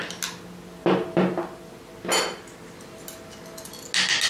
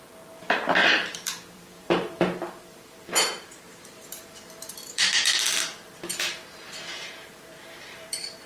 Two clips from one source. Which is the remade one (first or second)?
second